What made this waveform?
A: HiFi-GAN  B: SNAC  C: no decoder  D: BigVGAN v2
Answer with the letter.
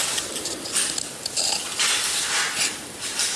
C